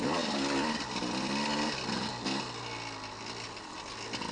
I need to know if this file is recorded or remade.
recorded